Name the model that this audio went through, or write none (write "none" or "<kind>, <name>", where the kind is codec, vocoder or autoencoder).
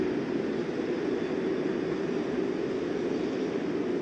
none